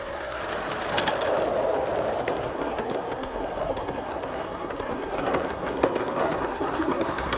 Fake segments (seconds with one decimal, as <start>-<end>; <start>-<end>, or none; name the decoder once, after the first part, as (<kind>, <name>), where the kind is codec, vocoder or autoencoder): 0.0-0.4 (codec, SNAC); 2.2-7.4